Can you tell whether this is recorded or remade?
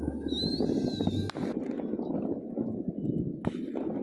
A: recorded